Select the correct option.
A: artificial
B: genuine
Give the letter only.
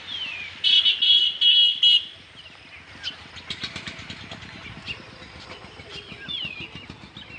B